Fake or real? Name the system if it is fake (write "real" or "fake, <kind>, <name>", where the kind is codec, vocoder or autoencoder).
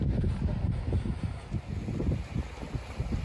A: real